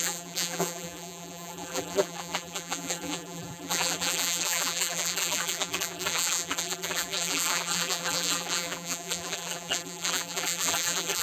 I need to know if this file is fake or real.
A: fake